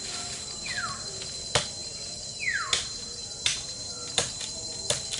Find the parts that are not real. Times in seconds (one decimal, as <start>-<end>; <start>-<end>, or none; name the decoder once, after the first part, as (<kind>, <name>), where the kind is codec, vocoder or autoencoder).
none